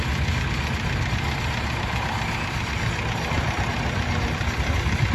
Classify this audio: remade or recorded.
recorded